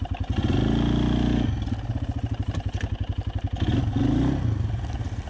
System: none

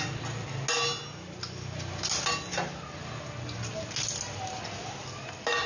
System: none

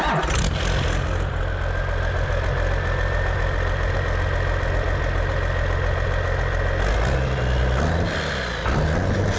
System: none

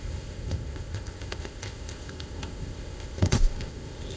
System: codec, ZipCodec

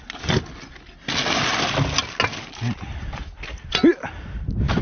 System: none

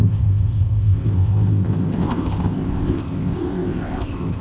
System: codec, ZipCodec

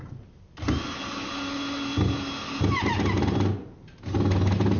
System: none